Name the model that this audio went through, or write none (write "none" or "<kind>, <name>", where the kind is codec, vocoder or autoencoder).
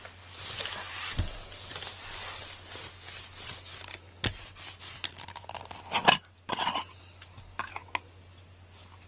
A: none